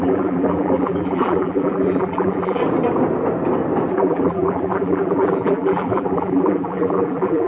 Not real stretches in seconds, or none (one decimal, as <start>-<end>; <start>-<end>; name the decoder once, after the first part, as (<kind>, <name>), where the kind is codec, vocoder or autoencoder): 0.0-2.6 (vocoder, BigVGAN v2); 3.9-7.5